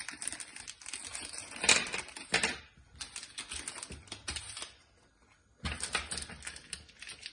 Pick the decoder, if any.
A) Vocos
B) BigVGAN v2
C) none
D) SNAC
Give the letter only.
C